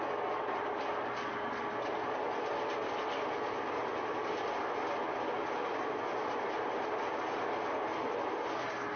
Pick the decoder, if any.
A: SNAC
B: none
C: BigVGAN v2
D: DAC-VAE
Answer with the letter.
B